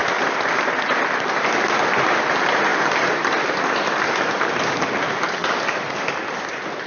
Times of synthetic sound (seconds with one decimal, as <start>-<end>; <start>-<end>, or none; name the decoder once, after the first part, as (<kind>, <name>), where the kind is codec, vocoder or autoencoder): none

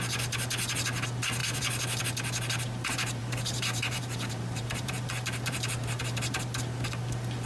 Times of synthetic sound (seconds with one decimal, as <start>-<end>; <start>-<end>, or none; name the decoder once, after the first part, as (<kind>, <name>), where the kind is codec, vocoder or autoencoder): 1.4-2.0 (vocoder, BigVGAN v2); 3.2-6.0

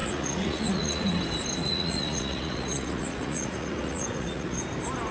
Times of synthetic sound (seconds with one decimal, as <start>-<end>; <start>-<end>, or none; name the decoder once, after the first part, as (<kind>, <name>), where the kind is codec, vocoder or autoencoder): 0.0-1.2 (vocoder, Vocos); 1.6-4.6

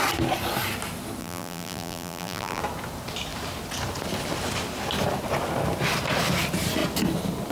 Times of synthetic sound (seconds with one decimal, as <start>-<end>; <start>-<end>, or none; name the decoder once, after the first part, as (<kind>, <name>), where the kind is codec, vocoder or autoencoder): 1.2-2.6 (vocoder, BigVGAN v2)

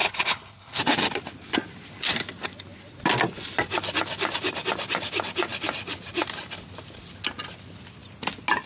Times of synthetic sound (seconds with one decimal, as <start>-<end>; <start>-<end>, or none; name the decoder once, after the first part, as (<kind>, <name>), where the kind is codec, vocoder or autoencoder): 0.0-0.8 (codec, HILCodec)

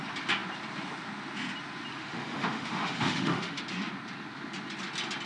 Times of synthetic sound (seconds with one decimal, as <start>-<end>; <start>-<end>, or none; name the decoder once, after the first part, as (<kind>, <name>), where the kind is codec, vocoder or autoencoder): 1.9-3.6 (autoencoder, DAC-VAE)

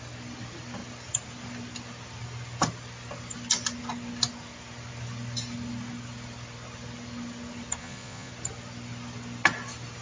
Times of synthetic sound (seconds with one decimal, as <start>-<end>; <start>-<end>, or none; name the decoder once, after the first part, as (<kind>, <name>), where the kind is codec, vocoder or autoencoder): 7.8-8.3 (vocoder, Vocos)

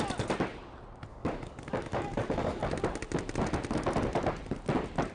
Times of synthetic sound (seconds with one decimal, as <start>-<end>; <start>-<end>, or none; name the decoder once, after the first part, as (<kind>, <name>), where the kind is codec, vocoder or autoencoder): 1.1-2.7 (codec, DAC)